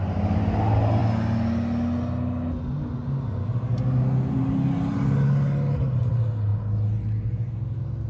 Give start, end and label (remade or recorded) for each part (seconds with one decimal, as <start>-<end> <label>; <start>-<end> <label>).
0.0-8.1 recorded